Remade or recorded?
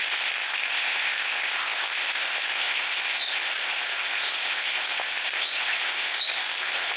remade